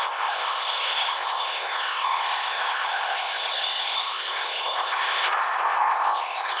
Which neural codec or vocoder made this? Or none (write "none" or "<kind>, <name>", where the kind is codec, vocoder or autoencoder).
codec, ZipCodec